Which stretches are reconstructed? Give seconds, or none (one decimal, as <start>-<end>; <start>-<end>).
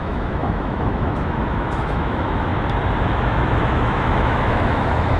0.0-2.5; 3.0-5.2